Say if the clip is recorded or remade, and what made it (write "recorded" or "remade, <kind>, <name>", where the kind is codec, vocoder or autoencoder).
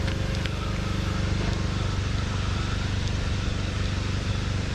recorded